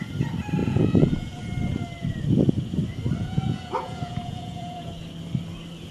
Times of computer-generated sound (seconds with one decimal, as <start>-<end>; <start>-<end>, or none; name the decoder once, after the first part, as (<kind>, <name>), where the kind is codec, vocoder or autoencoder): 0.6-1.4 (vocoder, Vocos); 3.2-4.9